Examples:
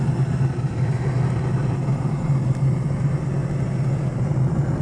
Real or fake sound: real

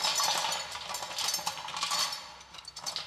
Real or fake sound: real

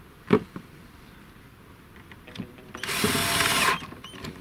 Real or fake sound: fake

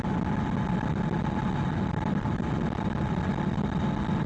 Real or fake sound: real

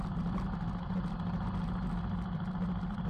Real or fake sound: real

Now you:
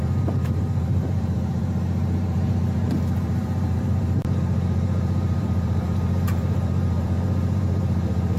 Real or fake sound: fake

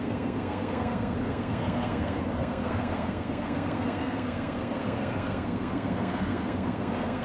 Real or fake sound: fake